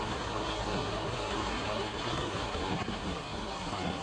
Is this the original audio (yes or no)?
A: no